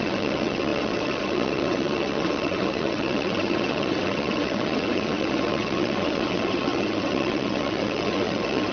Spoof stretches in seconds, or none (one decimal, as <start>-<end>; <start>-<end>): 0.0-8.7